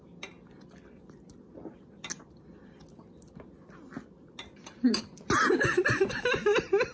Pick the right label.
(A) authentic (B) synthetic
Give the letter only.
A